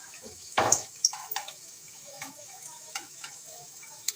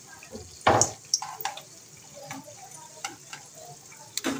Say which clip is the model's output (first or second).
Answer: first